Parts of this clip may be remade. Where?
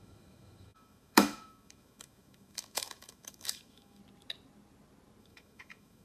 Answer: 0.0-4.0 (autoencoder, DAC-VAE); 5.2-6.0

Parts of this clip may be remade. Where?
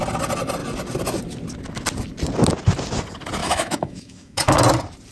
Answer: 3.4-4.5 (autoencoder, DAC-VAE)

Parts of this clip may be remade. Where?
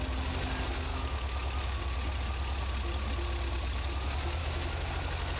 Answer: 0.9-1.8 (autoencoder, DAC-VAE); 4.4-4.9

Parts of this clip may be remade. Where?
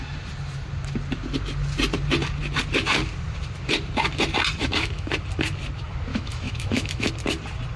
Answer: 4.6-5.1 (autoencoder, DAC-VAE); 6.1-7.1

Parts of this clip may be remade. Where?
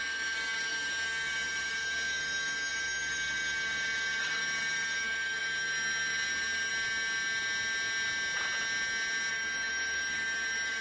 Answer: 0.0-6.7 (autoencoder, DAC-VAE); 9.3-10.8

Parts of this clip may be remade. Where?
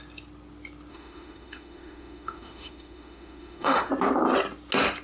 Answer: 0.9-3.9 (autoencoder, DAC-VAE)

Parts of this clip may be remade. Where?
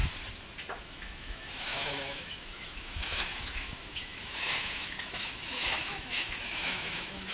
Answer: 0.8-7.3 (autoencoder, DAC-VAE)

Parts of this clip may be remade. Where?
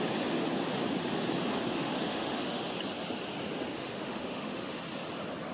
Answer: 1.7-2.6 (autoencoder, DAC-VAE); 3.7-4.8